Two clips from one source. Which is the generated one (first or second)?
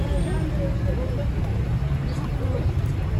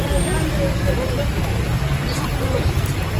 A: second